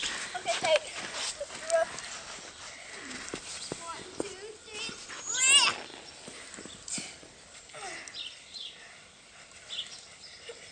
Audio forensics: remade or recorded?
recorded